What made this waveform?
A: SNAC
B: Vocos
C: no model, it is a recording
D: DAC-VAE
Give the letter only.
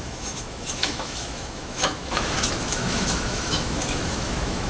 D